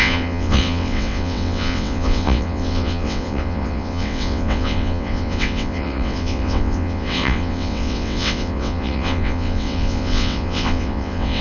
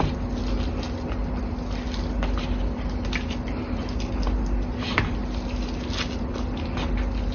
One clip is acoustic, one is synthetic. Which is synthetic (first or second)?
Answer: first